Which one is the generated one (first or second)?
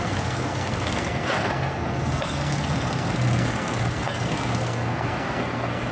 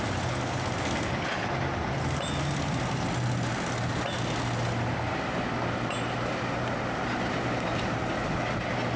first